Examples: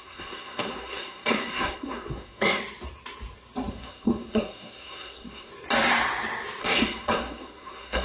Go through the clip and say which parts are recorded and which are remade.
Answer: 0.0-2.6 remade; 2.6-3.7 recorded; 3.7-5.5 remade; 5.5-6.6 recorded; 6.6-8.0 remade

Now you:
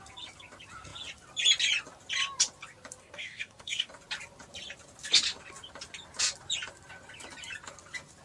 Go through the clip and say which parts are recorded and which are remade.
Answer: 0.0-3.0 recorded; 3.0-3.9 remade; 3.9-8.2 recorded